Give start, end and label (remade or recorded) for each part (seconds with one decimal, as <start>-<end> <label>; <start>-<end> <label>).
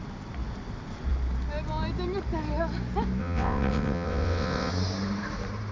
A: 0.0-3.2 recorded; 3.2-4.7 remade; 4.7-5.7 recorded